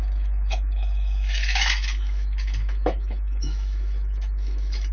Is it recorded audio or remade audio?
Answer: remade